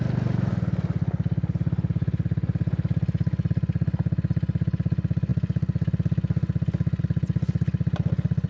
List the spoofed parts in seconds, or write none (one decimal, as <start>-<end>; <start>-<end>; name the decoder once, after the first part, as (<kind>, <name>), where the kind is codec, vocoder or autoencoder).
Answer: none